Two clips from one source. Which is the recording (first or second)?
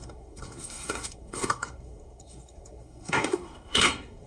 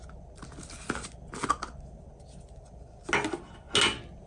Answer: second